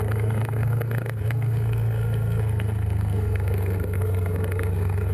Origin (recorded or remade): remade